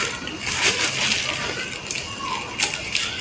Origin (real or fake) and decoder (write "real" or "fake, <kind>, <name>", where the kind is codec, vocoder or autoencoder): real